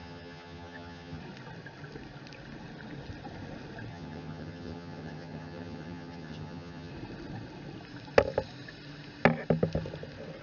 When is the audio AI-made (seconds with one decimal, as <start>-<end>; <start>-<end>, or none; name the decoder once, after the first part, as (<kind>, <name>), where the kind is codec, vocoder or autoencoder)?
0.0-1.2 (vocoder, HiFi-GAN); 3.9-6.9